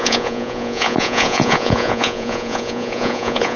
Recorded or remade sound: remade